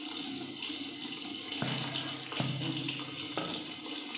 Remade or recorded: recorded